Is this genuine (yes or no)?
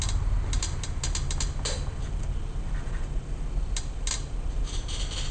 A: yes